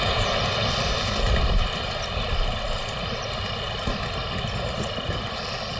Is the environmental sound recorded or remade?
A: recorded